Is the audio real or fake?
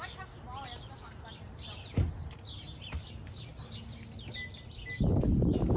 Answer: real